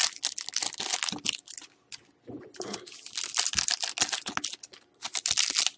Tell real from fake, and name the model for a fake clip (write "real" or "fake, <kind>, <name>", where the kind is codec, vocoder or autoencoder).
real